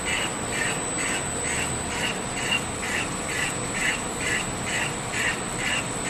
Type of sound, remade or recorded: recorded